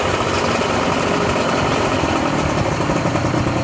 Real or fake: real